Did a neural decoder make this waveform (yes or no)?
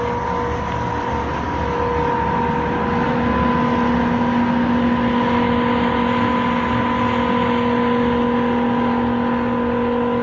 no